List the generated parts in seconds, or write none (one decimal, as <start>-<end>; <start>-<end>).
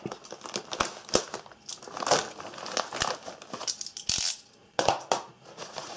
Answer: 4.6-6.0